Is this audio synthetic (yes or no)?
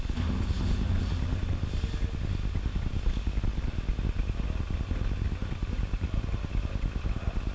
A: no